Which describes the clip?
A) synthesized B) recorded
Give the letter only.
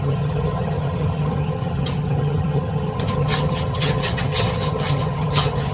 A